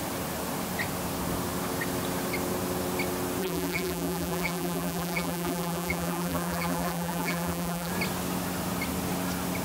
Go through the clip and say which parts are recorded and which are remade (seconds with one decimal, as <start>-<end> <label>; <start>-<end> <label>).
0.0-3.4 recorded; 3.4-7.9 remade; 7.9-9.6 recorded